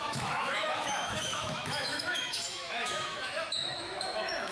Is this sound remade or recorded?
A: remade